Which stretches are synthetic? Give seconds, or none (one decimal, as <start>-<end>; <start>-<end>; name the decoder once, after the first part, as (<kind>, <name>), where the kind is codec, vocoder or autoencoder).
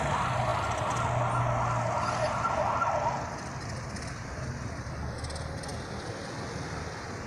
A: none